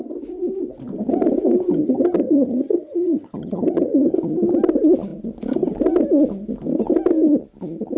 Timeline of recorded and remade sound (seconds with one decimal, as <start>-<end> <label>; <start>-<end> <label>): 0.0-1.8 recorded; 1.8-4.1 remade; 4.1-8.0 recorded